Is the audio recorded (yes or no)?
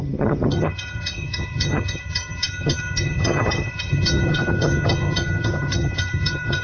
no